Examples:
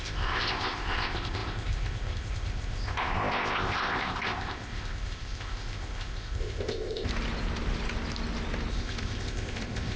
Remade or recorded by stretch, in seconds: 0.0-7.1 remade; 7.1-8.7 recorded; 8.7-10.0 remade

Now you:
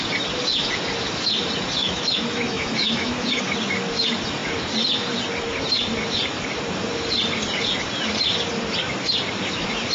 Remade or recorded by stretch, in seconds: 0.0-1.8 recorded; 1.8-3.4 remade; 3.4-9.9 recorded

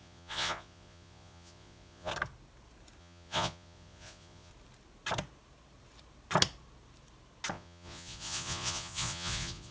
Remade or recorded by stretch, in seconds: 0.0-2.1 remade; 2.1-3.0 recorded; 3.0-4.5 remade; 4.5-7.5 recorded; 7.5-9.7 remade

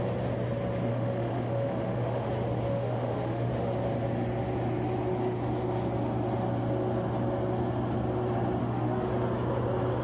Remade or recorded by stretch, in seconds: 0.0-0.9 recorded; 0.9-2.3 remade; 2.3-2.7 recorded; 2.7-3.5 remade; 3.5-8.6 recorded; 8.6-9.1 remade; 9.1-10.0 recorded